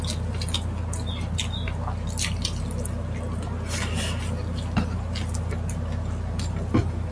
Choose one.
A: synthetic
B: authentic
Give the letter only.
B